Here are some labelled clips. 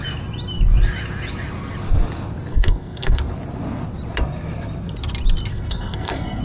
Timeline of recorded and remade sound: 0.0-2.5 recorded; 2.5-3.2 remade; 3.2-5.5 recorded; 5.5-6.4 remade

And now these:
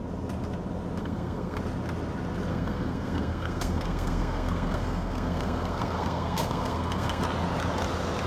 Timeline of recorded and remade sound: 0.0-1.0 recorded; 1.0-1.6 remade; 1.6-2.5 recorded; 2.5-7.2 remade; 7.2-8.3 recorded

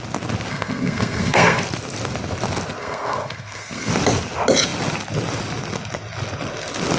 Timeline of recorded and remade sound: 0.0-0.5 recorded; 0.5-1.6 remade; 1.6-2.8 recorded; 2.8-3.9 remade; 3.9-7.0 recorded

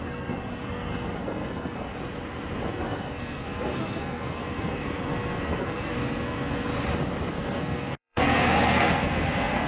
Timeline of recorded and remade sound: 0.0-1.9 remade; 1.9-2.7 recorded; 2.7-6.7 remade; 6.7-7.3 recorded; 7.3-9.7 remade

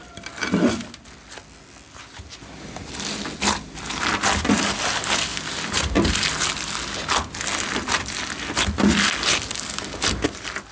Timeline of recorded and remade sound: 0.0-10.7 recorded

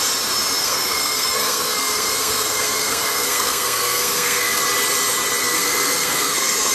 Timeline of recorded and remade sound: 0.0-0.6 recorded; 0.6-4.6 remade; 4.6-5.4 recorded; 5.4-6.7 remade

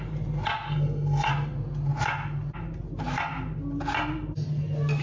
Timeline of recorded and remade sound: 0.0-0.7 recorded; 0.7-1.3 remade; 1.3-5.0 recorded

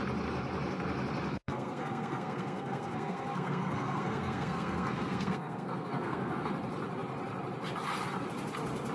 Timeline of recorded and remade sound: 0.0-1.3 recorded; 1.3-6.5 remade; 6.5-8.9 recorded